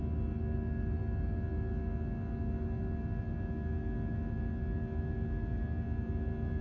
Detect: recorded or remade recorded